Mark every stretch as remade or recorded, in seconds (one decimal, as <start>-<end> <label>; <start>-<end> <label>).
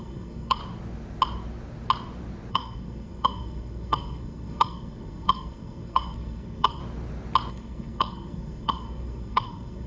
0.0-0.6 remade; 0.6-2.5 recorded; 2.5-6.8 remade; 6.8-7.5 recorded; 7.5-9.9 remade